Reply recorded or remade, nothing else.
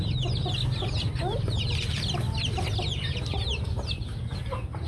recorded